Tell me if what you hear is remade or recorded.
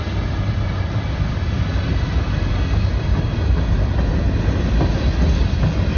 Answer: recorded